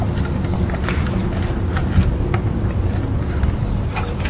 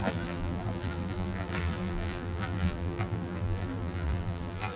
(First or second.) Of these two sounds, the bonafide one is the first